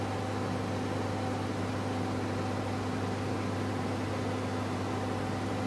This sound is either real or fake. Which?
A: real